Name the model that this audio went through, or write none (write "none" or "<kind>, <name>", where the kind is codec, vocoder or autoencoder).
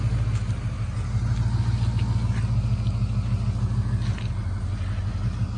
none